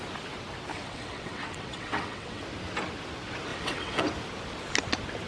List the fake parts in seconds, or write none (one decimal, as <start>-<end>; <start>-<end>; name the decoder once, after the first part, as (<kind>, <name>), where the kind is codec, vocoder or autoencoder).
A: 0.7-2.4 (vocoder, WaveNeXt); 3.5-4.0